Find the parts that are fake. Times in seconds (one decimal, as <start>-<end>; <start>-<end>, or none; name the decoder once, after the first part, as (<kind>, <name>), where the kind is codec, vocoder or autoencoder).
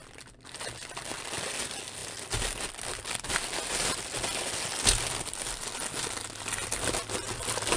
none